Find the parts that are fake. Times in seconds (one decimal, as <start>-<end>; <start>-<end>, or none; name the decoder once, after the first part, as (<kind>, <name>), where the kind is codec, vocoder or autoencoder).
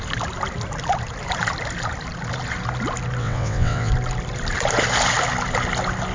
3.2-3.9 (vocoder, WaveNeXt)